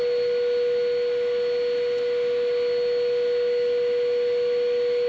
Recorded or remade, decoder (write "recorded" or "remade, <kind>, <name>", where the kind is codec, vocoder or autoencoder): recorded